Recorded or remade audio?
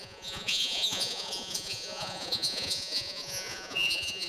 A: remade